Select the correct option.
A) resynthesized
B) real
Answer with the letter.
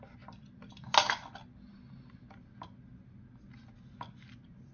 B